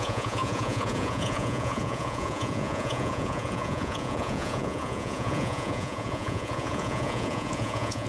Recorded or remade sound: remade